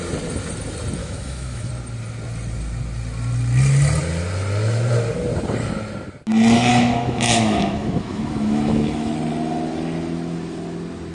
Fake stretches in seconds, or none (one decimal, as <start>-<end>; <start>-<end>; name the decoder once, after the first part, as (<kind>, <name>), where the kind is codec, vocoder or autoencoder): 1.0-1.7 (autoencoder, DAC-VAE); 6.7-9.1